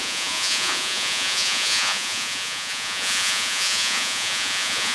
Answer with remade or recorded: remade